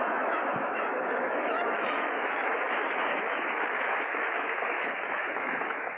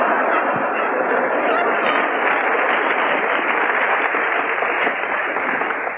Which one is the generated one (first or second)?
first